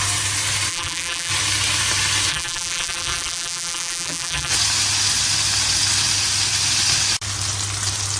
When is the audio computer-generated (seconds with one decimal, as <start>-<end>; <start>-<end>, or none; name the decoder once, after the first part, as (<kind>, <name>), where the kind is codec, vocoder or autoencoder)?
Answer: 0.7-1.3 (vocoder, BigVGAN v2); 2.3-4.5